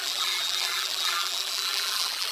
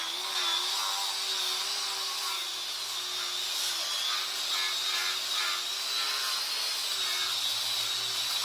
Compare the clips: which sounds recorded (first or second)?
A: second